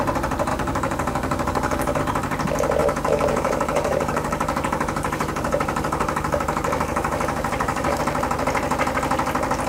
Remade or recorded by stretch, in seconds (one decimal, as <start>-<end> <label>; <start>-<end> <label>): 0.0-0.5 recorded; 0.5-2.0 remade; 2.0-2.8 recorded; 2.8-8.0 remade; 8.0-9.7 recorded